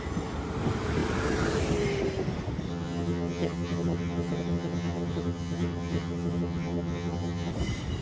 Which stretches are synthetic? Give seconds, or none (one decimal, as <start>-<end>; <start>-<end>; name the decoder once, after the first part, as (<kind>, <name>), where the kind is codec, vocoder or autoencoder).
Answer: 2.7-7.5 (vocoder, HiFi-GAN)